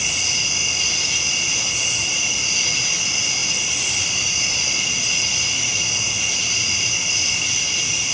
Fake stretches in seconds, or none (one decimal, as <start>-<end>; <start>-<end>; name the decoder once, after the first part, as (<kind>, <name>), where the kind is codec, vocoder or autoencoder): none